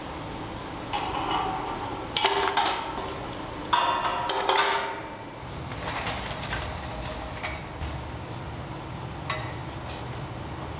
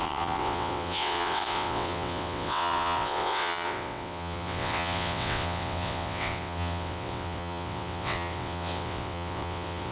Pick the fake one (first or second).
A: second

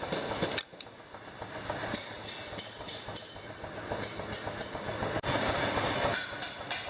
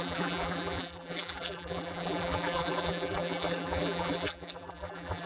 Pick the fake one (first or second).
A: second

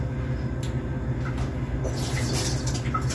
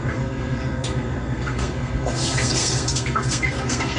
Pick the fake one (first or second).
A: second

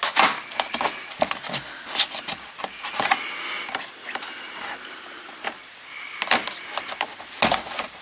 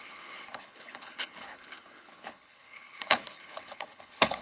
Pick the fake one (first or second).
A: second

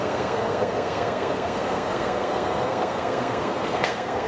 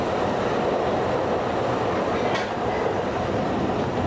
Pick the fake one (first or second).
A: first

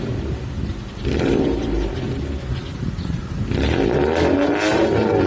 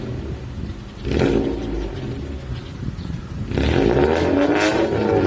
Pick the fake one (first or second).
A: first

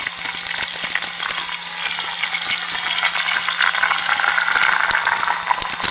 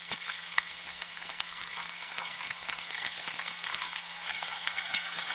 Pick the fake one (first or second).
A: second